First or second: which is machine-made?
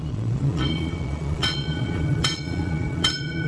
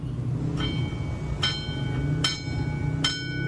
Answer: first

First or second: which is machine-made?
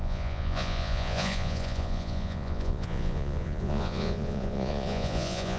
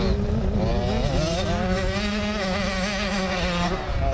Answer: first